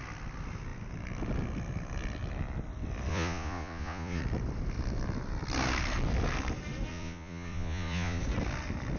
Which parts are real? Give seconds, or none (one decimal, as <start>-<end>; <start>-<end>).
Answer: 0.0-3.1; 4.2-6.9; 8.2-9.0